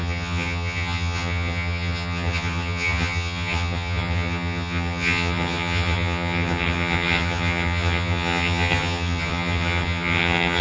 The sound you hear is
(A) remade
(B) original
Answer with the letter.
A